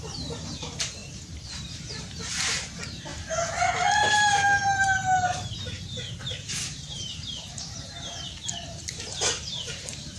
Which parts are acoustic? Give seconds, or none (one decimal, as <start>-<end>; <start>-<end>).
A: 3.1-4.1